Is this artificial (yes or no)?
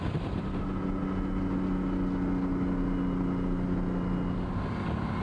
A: no